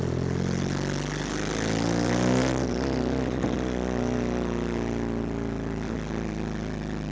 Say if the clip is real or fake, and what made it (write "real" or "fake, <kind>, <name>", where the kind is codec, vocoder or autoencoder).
real